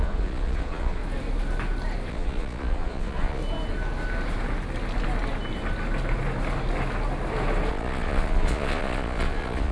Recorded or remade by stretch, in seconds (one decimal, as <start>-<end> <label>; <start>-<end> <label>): 0.0-1.0 remade; 1.0-2.1 recorded; 2.1-3.4 remade; 3.4-7.7 recorded; 7.7-9.7 remade